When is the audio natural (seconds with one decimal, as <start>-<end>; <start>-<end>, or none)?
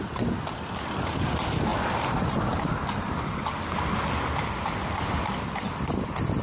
0.0-1.7; 2.4-6.4